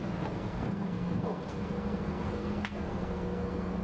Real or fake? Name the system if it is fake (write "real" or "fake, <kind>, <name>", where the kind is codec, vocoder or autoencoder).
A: fake, codec, SNAC